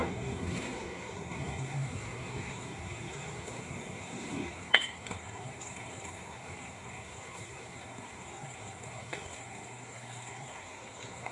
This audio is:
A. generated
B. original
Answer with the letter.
A